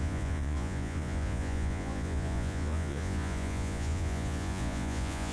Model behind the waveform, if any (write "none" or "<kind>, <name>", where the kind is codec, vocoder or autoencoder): vocoder, Vocos